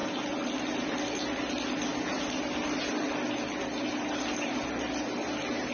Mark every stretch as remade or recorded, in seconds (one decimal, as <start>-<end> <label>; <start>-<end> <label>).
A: 0.0-5.7 recorded